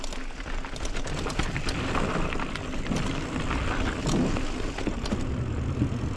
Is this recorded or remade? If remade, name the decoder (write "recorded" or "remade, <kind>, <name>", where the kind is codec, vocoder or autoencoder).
recorded